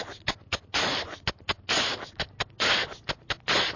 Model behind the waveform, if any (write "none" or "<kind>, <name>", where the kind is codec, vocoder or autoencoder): none